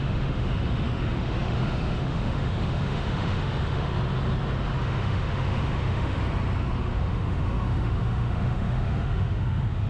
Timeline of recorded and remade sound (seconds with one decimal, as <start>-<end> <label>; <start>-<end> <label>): 0.0-3.9 remade; 3.9-4.8 recorded; 4.8-6.2 remade; 6.2-6.8 recorded; 6.8-9.9 remade